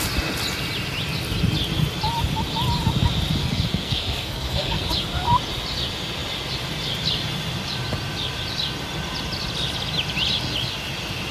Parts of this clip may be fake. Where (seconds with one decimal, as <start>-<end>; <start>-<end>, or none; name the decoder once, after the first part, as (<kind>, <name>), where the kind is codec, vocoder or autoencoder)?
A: 3.4-4.9 (codec, SNAC)